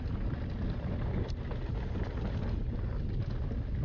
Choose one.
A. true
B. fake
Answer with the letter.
A